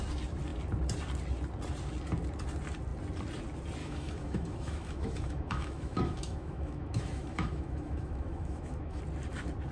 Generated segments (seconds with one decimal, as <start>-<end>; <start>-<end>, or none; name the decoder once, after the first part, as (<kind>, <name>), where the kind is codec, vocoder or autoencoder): 3.8-9.0 (autoencoder, DAC-VAE)